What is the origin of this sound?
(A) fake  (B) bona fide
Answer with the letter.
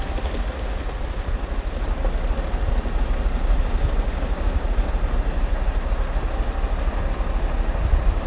B